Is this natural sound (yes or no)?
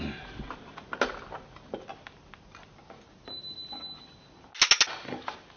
yes